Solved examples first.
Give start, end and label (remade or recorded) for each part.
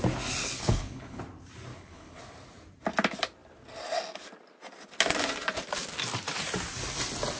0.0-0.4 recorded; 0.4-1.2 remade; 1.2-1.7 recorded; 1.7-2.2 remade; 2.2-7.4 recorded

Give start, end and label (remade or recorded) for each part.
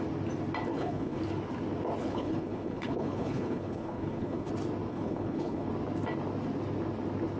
0.0-0.7 recorded; 0.7-1.2 remade; 1.2-2.0 recorded; 2.0-4.5 remade; 4.5-4.9 recorded; 4.9-5.7 remade; 5.7-7.4 recorded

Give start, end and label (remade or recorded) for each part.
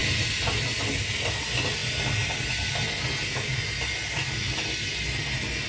0.0-5.7 recorded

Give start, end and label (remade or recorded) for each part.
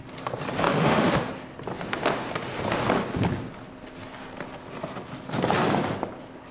0.0-0.6 recorded; 0.6-1.3 remade; 1.3-6.5 recorded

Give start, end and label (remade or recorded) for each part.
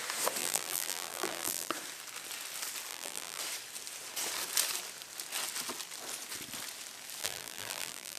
0.0-0.4 recorded; 0.4-1.7 remade; 1.7-2.9 recorded; 2.9-3.4 remade; 3.4-7.2 recorded; 7.2-8.2 remade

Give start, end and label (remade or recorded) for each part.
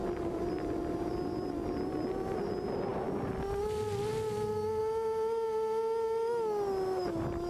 0.0-7.5 recorded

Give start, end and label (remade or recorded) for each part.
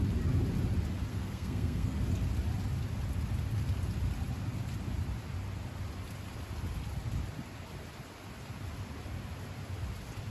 0.0-1.1 recorded; 1.1-2.0 remade; 2.0-10.3 recorded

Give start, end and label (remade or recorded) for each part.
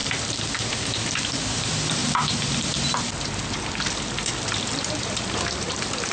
0.0-0.7 recorded; 0.7-2.0 remade; 2.0-5.0 recorded; 5.0-6.1 remade